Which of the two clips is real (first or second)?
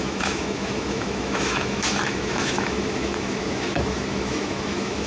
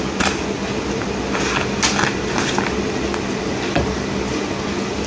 second